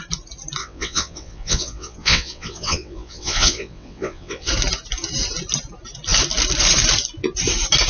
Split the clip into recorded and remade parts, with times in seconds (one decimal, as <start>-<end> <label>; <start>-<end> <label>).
0.0-0.6 recorded; 0.6-4.5 remade; 4.5-7.9 recorded